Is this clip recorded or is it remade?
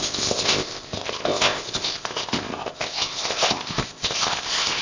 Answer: remade